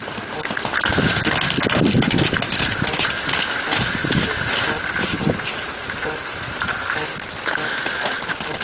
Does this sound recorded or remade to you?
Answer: recorded